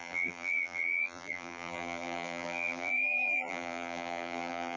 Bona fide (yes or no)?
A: no